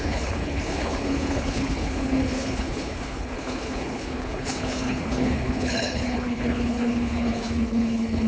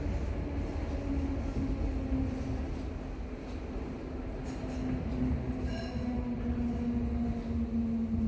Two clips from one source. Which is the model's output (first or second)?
first